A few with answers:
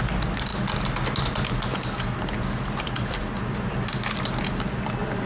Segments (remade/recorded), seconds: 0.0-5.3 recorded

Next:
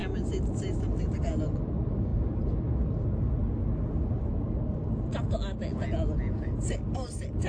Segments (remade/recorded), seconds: 0.0-7.5 recorded